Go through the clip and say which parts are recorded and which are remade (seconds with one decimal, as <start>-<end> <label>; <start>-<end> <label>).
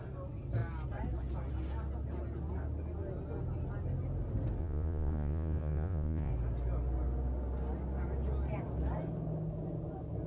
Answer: 0.0-4.6 recorded; 4.6-6.3 remade; 6.3-10.3 recorded